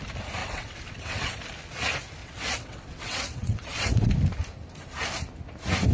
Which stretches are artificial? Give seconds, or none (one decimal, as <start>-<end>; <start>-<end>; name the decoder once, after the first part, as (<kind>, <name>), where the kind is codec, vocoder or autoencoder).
0.4-1.4 (vocoder, WaveNeXt); 2.2-4.1